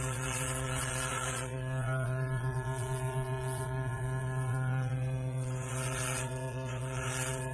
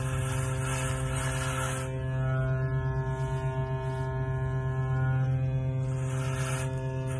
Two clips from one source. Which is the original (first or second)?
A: second